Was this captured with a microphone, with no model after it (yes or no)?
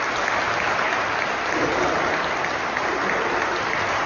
yes